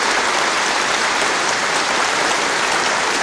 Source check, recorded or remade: remade